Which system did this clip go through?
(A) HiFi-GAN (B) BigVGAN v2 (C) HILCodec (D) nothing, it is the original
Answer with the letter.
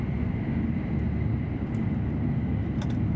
D